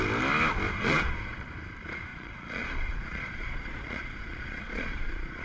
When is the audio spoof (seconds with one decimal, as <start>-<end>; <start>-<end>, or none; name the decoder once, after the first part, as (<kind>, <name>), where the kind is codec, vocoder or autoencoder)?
0.8-1.5 (vocoder, Vocos); 2.1-5.4